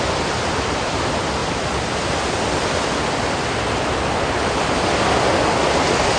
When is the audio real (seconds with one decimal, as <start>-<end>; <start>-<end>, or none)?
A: 0.0-6.2